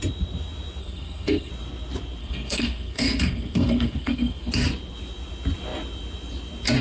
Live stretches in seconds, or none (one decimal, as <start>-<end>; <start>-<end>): 0.0-0.8; 1.5-2.2; 4.5-6.8